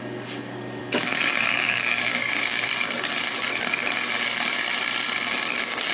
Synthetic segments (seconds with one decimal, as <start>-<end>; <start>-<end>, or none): 0.0-2.7